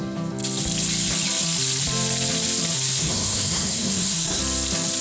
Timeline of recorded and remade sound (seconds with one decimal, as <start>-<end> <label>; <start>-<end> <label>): 0.0-3.0 recorded; 3.0-4.4 remade; 4.4-5.0 recorded